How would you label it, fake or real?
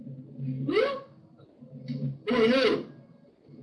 real